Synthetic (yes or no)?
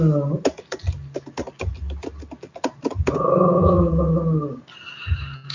no